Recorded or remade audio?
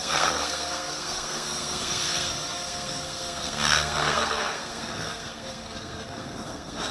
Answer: remade